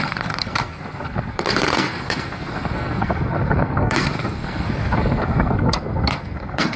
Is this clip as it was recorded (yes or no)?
no